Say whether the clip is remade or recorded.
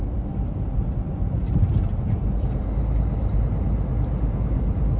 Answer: recorded